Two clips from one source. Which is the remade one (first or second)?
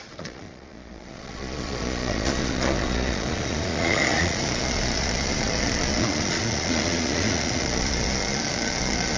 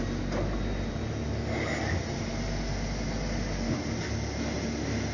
first